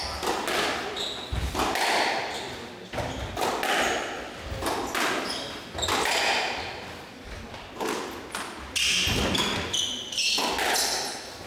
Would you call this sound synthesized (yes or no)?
no